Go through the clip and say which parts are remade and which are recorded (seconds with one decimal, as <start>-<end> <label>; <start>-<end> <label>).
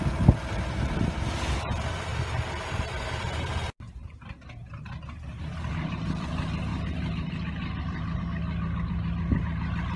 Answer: 0.0-4.0 recorded; 4.0-5.6 remade; 5.6-10.0 recorded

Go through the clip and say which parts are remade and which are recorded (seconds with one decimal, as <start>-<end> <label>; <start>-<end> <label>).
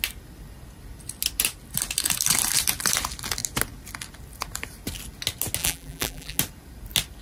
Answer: 0.0-5.6 recorded; 5.6-6.4 remade; 6.4-7.2 recorded